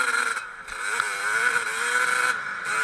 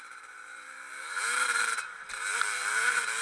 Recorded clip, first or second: first